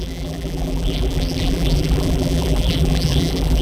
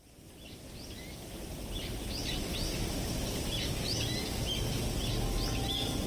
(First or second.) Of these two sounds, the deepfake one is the first